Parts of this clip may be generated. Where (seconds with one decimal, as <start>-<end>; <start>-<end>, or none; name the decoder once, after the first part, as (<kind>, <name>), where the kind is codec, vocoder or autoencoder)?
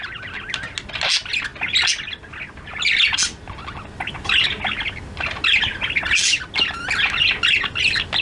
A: none